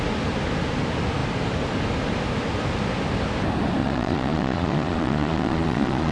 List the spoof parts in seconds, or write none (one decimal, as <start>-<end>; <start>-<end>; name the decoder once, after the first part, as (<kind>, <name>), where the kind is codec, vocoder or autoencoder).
3.8-6.1 (vocoder, Vocos)